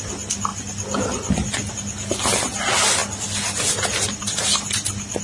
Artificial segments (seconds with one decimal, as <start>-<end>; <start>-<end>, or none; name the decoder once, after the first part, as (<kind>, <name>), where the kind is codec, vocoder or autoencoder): none